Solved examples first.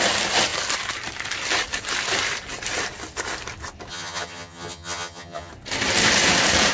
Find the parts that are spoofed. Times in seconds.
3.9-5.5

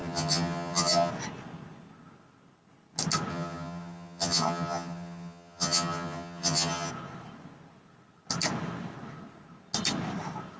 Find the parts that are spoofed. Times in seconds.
0.0-1.1; 3.3-6.9

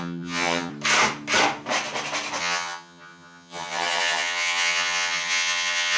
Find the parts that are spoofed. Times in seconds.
0.0-0.7; 2.4-6.0